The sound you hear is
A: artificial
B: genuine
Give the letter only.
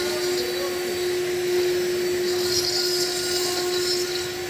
B